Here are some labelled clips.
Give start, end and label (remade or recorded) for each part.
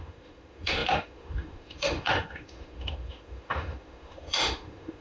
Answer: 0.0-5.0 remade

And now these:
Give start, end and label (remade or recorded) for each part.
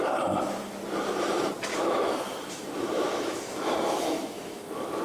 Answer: 0.0-1.7 recorded; 1.7-5.0 remade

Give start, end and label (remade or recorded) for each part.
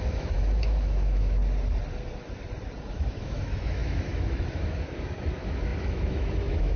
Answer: 0.0-1.4 remade; 1.4-2.9 recorded; 2.9-6.8 remade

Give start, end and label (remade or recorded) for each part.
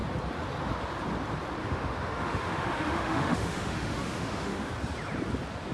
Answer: 0.0-1.6 recorded; 1.6-4.7 remade; 4.7-5.7 recorded